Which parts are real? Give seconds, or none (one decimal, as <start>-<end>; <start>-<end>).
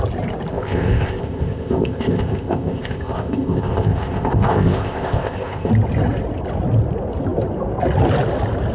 0.0-0.5; 5.7-8.7